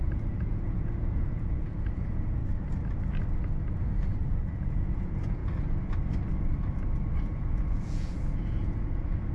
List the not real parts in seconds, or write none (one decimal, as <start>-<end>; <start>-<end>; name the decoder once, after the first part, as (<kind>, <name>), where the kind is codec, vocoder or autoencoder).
0.0-2.4 (vocoder, Vocos); 3.8-5.4; 7.2-9.3